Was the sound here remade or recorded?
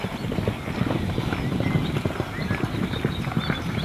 recorded